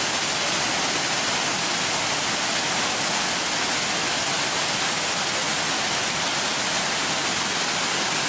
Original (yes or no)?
yes